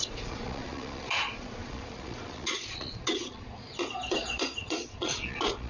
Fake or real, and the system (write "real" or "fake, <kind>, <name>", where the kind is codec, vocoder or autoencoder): fake, vocoder, Vocos